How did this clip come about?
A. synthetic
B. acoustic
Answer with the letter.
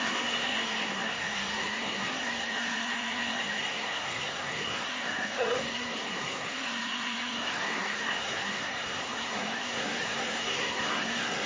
A